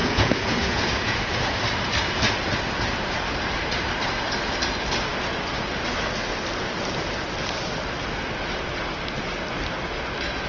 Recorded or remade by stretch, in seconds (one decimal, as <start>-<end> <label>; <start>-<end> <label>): 0.0-1.2 remade; 1.2-10.5 recorded